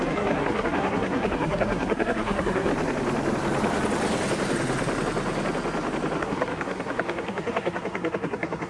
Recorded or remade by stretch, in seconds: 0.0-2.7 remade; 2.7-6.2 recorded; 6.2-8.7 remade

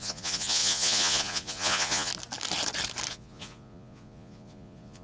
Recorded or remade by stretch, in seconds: 0.0-2.1 remade; 2.1-3.1 recorded; 3.1-5.0 remade